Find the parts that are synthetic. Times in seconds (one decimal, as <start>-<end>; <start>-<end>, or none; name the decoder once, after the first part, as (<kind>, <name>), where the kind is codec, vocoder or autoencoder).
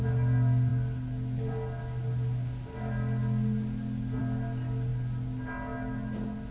none